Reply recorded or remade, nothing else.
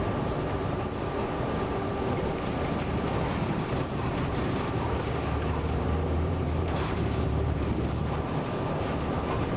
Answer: remade